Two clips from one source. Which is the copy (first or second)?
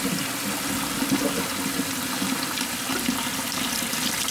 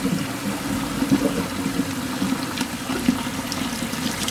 second